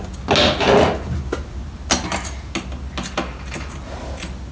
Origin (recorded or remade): recorded